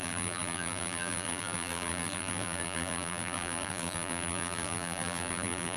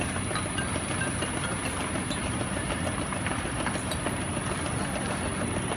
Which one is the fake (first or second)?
first